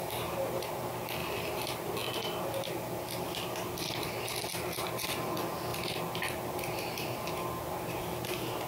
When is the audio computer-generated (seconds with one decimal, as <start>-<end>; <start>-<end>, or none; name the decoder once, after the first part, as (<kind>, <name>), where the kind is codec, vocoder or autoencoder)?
1.2-1.9 (vocoder, BigVGAN v2)